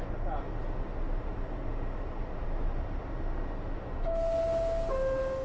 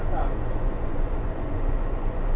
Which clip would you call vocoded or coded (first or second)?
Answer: second